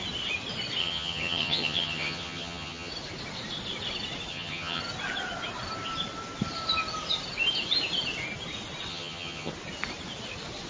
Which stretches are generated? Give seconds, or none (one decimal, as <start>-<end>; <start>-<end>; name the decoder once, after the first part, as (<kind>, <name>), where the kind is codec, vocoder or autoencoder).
0.8-2.9 (vocoder, HiFi-GAN); 4.3-4.8; 8.9-9.5